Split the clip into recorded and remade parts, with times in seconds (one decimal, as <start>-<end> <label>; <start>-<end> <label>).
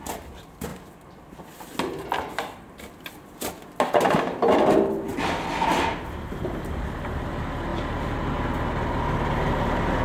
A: 0.0-5.1 recorded; 5.1-7.2 remade; 7.2-10.0 recorded